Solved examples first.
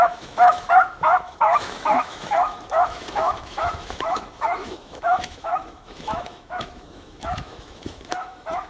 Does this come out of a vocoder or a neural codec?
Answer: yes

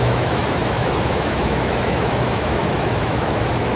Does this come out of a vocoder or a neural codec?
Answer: yes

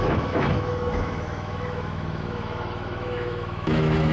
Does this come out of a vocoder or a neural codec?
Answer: yes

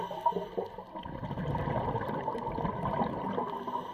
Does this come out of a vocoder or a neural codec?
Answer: no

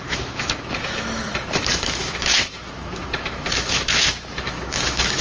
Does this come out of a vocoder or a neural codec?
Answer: yes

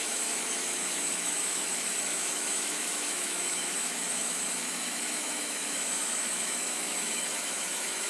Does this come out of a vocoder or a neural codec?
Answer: yes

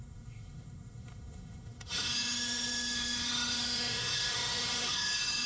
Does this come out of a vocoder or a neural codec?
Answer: yes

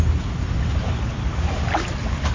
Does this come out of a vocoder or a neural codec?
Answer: no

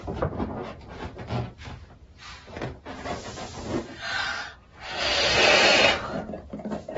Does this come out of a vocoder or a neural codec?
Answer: no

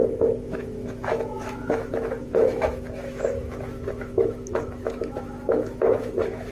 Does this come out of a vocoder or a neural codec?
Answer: yes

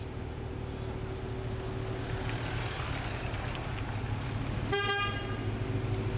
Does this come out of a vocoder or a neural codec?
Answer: no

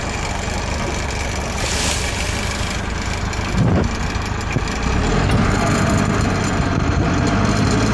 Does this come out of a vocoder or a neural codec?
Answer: no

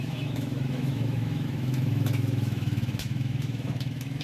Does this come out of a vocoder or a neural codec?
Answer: yes